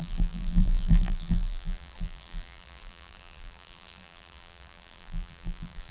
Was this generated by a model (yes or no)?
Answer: yes